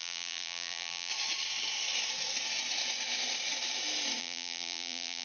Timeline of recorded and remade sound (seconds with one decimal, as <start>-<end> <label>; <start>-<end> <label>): 0.0-1.1 remade; 1.1-4.2 recorded; 4.2-5.2 remade